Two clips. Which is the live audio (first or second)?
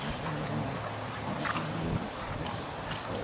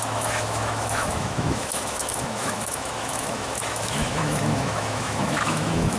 first